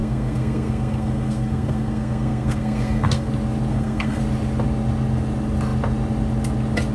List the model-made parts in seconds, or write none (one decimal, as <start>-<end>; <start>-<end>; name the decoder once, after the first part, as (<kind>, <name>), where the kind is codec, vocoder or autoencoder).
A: 0.0-3.3 (codec, SNAC); 3.7-4.2